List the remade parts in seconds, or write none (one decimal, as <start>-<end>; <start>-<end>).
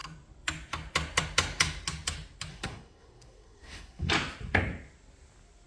2.5-4.1